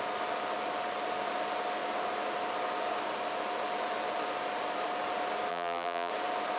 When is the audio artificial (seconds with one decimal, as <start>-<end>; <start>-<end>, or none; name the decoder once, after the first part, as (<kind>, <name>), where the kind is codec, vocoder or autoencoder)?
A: 5.5-6.1 (vocoder, BigVGAN v2)